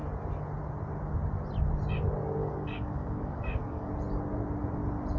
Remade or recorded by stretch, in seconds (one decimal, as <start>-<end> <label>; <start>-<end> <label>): 0.0-2.4 recorded; 2.4-3.9 remade; 3.9-5.2 recorded

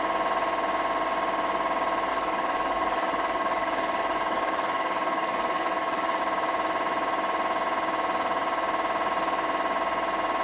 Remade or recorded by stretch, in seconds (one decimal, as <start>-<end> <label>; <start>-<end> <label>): 0.0-2.1 recorded; 2.1-6.2 remade; 6.2-10.4 recorded

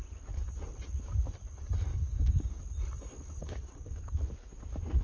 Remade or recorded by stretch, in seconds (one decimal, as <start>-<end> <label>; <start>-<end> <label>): 0.0-1.9 recorded; 1.9-2.6 remade; 2.6-3.4 recorded; 3.4-4.1 remade; 4.1-5.0 recorded

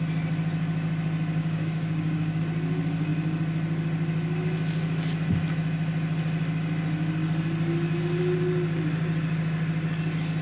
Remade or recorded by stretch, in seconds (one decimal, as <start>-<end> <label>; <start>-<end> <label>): 0.0-1.4 recorded; 1.4-2.4 remade; 2.4-10.4 recorded

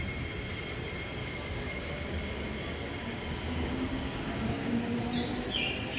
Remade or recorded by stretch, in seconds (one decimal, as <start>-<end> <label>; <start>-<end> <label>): 0.0-1.2 recorded; 1.2-4.8 remade; 4.8-6.0 recorded

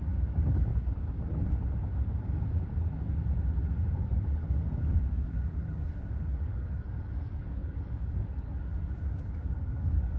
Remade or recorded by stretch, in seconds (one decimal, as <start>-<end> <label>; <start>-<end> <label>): 0.0-0.7 remade; 0.7-4.0 recorded; 4.0-10.2 remade